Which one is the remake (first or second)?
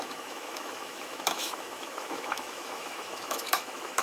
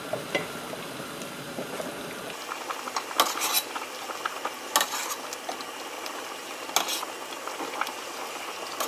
first